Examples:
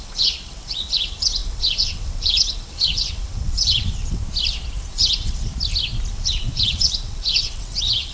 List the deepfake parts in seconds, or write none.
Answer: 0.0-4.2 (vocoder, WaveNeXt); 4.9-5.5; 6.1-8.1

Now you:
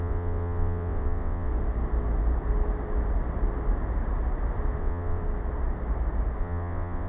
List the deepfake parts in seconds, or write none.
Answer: 0.0-1.5 (vocoder, WaveNeXt); 4.8-5.2; 6.4-7.1

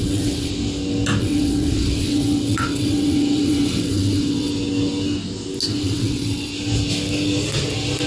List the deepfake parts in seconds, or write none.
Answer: 0.0-0.5 (vocoder, WaveNeXt); 1.2-4.5; 5.7-6.5